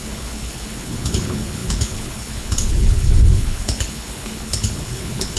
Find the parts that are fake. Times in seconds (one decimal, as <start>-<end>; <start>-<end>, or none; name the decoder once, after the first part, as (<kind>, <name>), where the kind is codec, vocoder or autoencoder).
0.0-5.4 (codec, HILCodec)